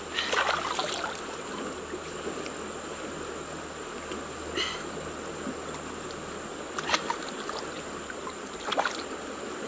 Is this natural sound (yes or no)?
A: yes